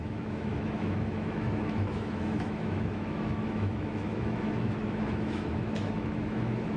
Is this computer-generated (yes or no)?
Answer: yes